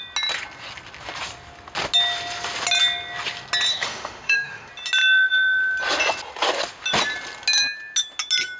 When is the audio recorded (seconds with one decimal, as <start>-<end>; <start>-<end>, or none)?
0.0-3.7; 4.7-8.6